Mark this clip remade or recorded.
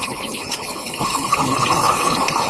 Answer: remade